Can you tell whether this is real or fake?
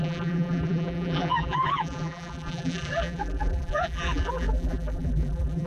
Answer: fake